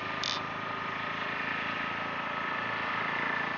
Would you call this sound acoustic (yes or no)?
yes